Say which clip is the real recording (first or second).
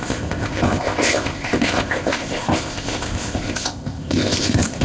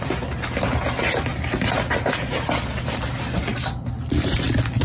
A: second